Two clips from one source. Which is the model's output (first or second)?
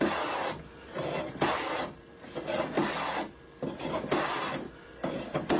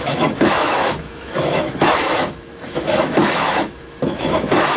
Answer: second